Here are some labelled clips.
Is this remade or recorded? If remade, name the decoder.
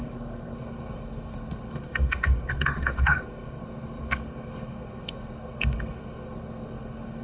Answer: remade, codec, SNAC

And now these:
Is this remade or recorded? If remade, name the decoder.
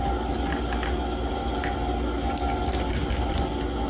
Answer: recorded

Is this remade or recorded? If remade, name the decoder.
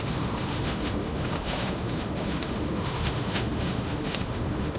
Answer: remade, autoencoder, DAC-VAE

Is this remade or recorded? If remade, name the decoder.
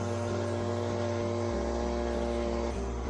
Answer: recorded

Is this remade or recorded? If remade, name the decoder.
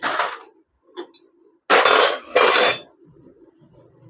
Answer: recorded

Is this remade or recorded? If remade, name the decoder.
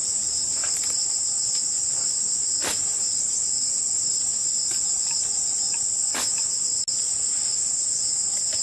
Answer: recorded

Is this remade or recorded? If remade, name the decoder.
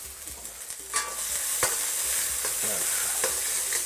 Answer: recorded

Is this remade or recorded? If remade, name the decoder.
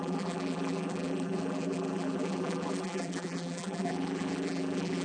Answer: remade, vocoder, BigVGAN v2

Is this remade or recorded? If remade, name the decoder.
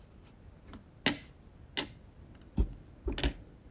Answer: recorded